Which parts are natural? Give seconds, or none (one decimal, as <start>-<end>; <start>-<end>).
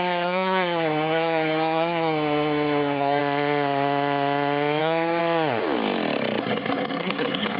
3.2-4.8; 5.2-6.4